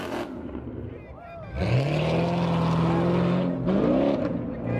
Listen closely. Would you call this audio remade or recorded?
recorded